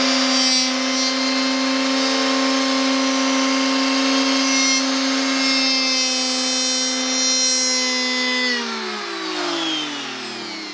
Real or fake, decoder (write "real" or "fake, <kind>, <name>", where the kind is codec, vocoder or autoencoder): real